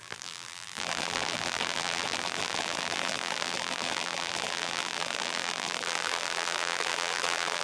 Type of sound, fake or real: fake